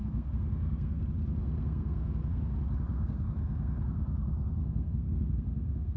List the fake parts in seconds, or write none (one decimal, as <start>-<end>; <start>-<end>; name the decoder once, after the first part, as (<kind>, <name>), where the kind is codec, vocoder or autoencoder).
0.0-1.0 (codec, SNAC); 1.4-2.4; 2.9-6.0